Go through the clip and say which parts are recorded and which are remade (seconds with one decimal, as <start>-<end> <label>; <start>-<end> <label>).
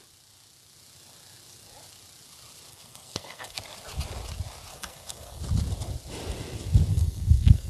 0.0-2.7 recorded; 2.7-3.6 remade; 3.6-4.7 recorded; 4.7-5.4 remade; 5.4-6.9 recorded; 6.9-7.7 remade